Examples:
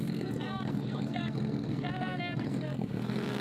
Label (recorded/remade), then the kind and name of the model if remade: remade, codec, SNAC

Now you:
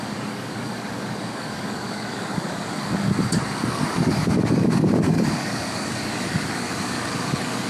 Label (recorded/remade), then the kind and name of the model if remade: remade, codec, DAC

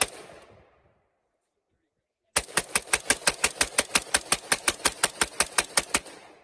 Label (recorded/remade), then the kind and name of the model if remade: recorded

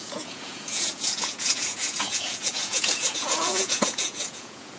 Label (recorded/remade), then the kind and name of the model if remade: remade, vocoder, Vocos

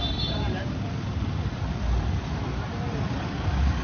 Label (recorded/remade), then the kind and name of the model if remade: remade, vocoder, BigVGAN v2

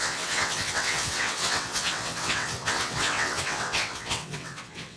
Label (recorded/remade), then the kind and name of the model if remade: remade, vocoder, WaveNeXt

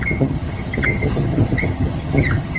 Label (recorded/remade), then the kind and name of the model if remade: remade, vocoder, HiFi-GAN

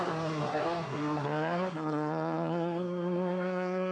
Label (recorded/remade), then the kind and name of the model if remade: remade, codec, SNAC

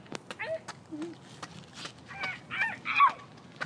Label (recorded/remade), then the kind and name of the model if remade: recorded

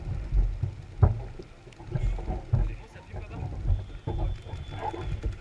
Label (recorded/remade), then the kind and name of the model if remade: recorded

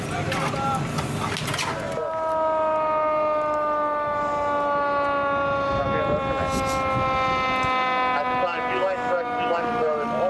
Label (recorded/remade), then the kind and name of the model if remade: recorded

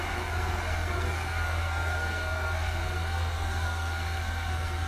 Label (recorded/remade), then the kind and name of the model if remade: remade, codec, SNAC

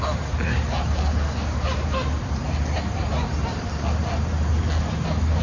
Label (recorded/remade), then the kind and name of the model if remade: recorded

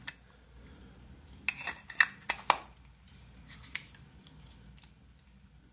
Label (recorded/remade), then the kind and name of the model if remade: recorded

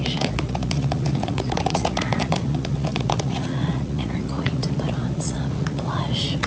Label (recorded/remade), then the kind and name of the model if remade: remade, vocoder, Vocos